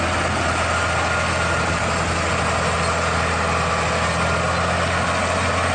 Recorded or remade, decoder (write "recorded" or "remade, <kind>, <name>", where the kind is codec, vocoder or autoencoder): recorded